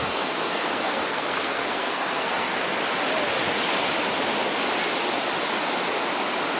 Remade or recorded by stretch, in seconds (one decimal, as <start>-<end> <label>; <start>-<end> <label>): 0.0-2.5 remade; 2.5-6.6 recorded